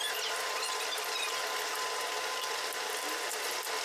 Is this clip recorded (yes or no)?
yes